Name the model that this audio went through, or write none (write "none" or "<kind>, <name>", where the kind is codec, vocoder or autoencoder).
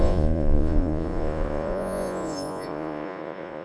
vocoder, Vocos